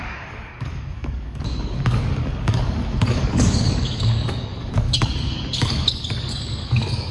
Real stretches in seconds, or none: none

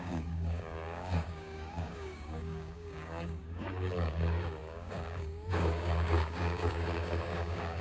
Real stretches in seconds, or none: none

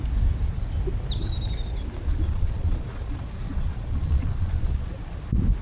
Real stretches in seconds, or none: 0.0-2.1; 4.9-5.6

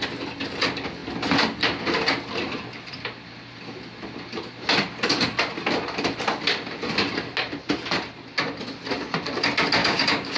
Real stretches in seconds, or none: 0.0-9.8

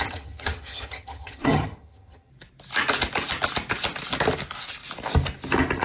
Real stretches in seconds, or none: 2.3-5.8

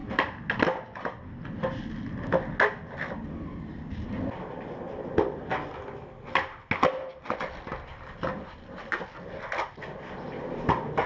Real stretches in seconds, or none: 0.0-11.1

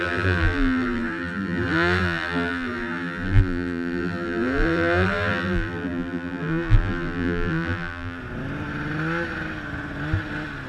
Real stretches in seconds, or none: 8.2-10.7